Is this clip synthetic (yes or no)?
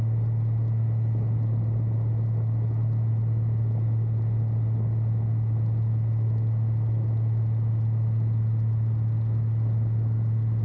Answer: no